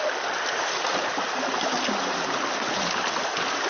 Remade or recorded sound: recorded